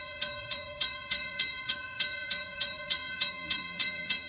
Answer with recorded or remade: remade